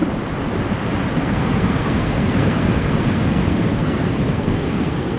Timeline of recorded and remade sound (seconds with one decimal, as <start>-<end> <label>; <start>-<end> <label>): 0.0-1.1 recorded; 1.1-5.2 remade